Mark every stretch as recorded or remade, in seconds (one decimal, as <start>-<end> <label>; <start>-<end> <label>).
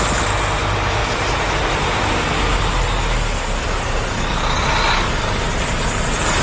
0.0-6.4 recorded